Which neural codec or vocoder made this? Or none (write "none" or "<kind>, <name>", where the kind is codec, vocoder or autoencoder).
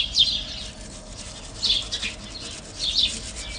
none